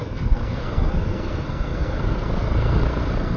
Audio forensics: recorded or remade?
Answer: remade